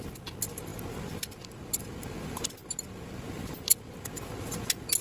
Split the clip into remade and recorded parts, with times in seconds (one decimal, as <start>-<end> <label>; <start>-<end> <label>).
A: 0.0-5.0 recorded